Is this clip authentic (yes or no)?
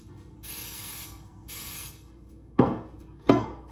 no